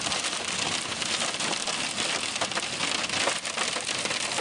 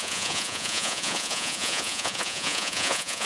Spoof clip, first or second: second